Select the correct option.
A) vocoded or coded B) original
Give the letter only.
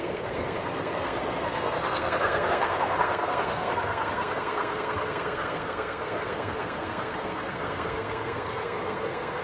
A